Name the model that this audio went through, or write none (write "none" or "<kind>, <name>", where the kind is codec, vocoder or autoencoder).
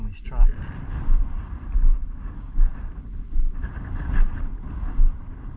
none